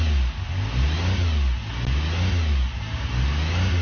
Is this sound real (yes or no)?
yes